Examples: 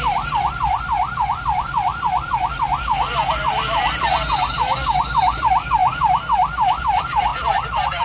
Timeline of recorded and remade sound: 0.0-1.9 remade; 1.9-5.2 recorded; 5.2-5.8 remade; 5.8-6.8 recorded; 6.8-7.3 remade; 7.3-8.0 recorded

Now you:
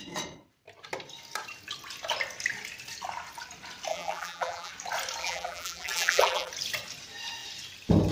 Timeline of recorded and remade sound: 0.0-3.9 recorded; 3.9-4.7 remade; 4.7-5.2 recorded; 5.2-6.5 remade; 6.5-8.1 recorded

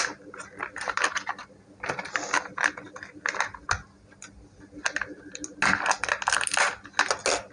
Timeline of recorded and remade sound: 0.0-7.5 recorded

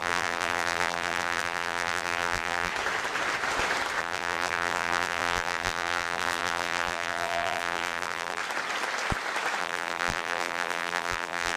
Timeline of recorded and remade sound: 0.0-2.7 remade; 2.7-4.0 recorded; 4.0-8.4 remade; 8.4-9.6 recorded; 9.6-11.6 remade

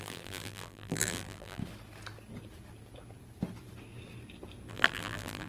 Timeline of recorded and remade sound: 0.0-1.6 remade; 1.6-4.7 recorded; 4.7-5.5 remade

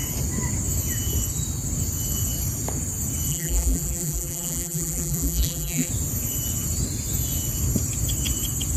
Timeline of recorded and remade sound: 0.0-3.3 recorded; 3.3-5.9 remade; 5.9-8.8 recorded